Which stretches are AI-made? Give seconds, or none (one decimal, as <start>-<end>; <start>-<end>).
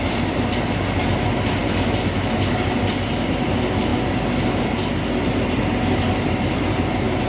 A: none